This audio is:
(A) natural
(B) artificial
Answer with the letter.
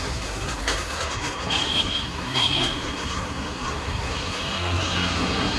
B